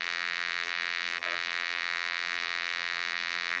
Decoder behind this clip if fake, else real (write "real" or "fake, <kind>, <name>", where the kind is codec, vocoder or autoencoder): fake, vocoder, BigVGAN v2